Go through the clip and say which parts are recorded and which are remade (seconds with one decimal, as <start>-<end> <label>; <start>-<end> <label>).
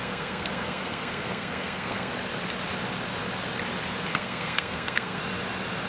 0.0-2.1 remade; 2.1-4.1 recorded; 4.1-5.2 remade; 5.2-5.9 recorded